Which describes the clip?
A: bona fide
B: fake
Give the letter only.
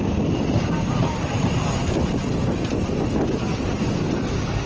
A